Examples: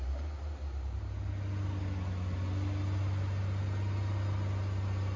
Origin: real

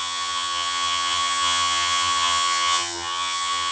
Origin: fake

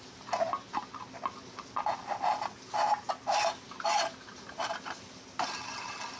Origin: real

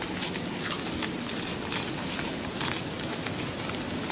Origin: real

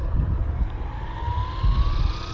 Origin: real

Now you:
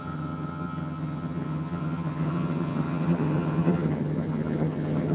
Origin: fake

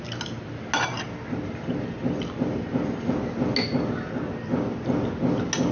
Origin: real